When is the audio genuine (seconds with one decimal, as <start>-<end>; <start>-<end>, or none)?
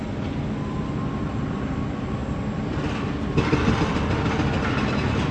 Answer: 0.0-5.3